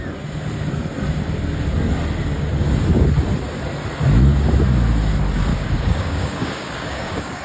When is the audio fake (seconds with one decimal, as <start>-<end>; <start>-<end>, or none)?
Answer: 5.5-7.4